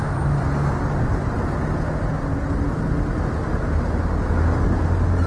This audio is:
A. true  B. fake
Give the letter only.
A